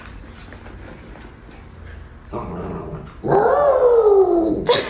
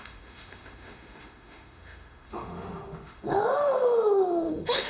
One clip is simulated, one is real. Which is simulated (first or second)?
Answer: second